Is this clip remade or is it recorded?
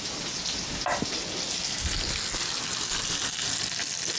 recorded